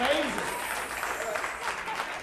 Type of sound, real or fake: real